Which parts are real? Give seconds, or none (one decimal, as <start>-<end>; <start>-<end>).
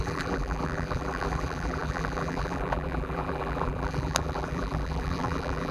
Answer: none